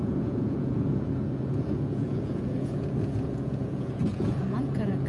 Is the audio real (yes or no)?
no